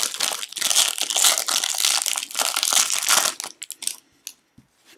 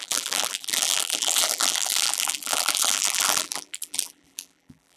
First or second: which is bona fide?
first